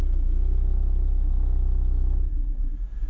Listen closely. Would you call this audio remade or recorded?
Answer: recorded